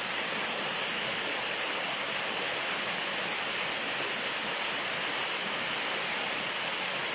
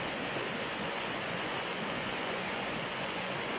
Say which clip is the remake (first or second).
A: second